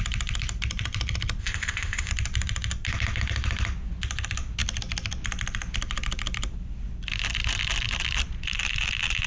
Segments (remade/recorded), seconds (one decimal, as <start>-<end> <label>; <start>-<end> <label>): 0.0-1.4 recorded; 1.4-2.1 remade; 2.1-9.3 recorded

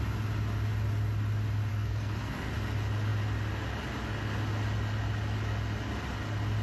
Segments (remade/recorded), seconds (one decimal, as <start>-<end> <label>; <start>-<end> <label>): 0.0-1.7 recorded; 1.7-2.5 remade; 2.5-6.6 recorded

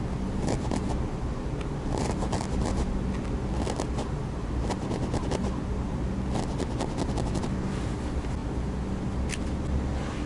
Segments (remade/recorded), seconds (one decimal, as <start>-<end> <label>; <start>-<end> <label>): 0.0-10.3 recorded

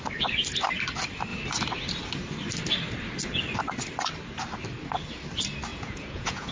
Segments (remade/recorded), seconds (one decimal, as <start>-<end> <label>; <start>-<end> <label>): 0.0-5.7 recorded; 5.7-6.5 remade

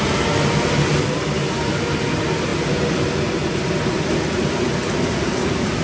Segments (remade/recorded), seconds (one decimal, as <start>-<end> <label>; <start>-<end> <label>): 0.0-5.8 recorded